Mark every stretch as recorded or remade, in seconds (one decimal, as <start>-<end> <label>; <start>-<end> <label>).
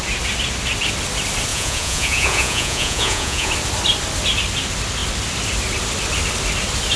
0.0-1.5 recorded; 1.5-3.5 remade; 3.5-7.0 recorded